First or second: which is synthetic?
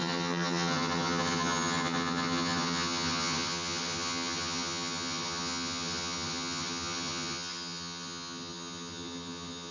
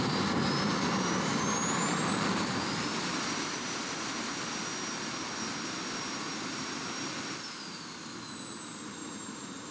first